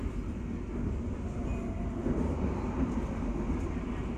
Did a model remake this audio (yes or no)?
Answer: no